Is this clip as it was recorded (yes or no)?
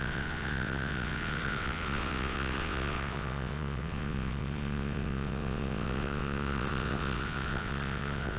no